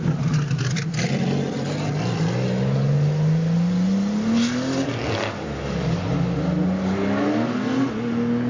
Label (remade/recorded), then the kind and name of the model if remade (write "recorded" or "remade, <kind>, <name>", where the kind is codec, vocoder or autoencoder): recorded